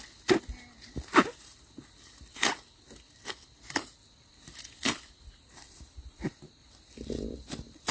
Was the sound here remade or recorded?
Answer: recorded